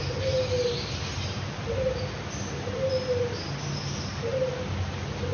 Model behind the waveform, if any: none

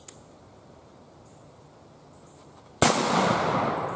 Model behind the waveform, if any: none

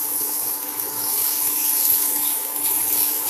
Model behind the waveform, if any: codec, DAC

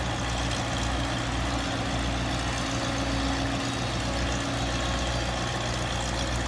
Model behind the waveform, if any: none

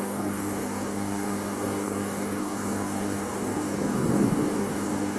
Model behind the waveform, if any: codec, DAC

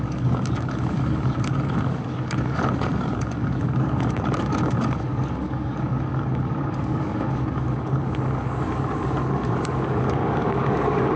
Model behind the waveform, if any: codec, DAC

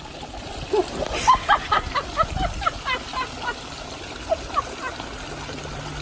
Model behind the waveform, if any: none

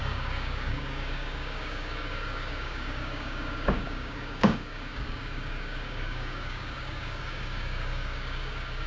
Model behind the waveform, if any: codec, DAC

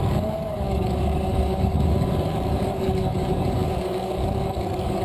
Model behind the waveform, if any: codec, DAC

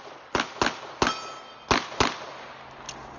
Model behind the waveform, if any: none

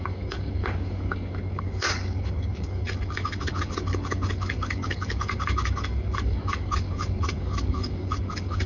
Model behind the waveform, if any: codec, DAC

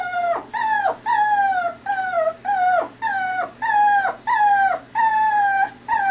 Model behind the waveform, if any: none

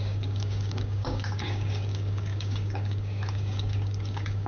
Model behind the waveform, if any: codec, DAC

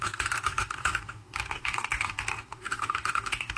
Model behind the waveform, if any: codec, DAC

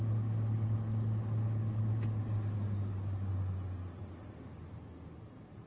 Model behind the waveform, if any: none